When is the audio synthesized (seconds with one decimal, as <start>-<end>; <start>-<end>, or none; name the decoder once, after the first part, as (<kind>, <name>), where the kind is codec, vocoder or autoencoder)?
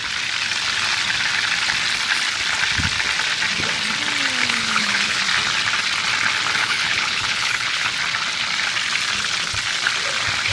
4.4-5.2 (codec, HILCodec); 6.6-7.9